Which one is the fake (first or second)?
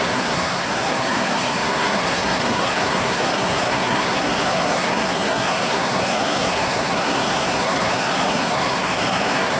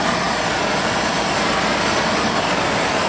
first